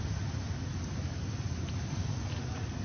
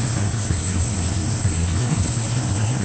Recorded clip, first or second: first